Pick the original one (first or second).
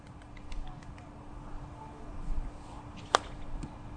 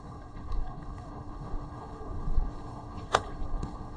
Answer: first